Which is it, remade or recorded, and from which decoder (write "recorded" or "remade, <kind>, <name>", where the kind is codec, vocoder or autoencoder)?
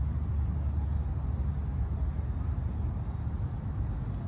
recorded